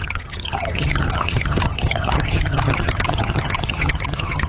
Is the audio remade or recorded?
remade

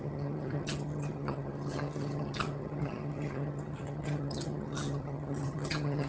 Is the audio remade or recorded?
remade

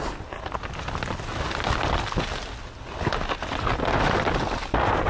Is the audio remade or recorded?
recorded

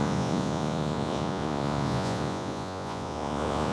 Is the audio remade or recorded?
remade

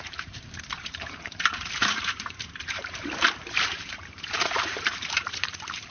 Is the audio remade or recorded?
remade